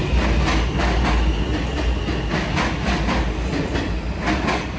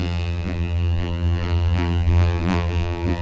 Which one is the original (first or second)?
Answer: first